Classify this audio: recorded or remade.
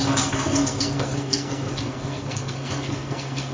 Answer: remade